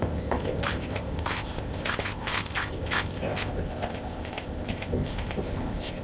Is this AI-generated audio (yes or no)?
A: yes